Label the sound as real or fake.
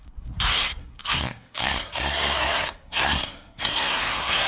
fake